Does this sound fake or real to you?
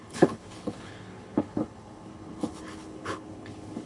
fake